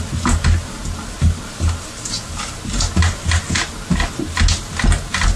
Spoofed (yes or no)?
no